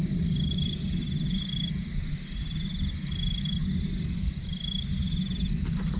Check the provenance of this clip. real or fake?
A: real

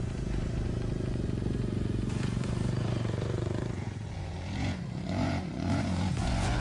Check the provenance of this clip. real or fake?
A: fake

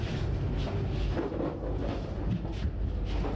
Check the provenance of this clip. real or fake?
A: real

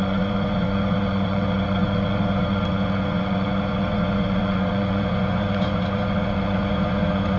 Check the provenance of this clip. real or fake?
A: fake